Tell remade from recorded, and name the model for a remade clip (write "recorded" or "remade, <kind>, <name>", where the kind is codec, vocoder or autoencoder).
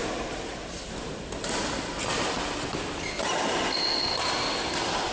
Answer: recorded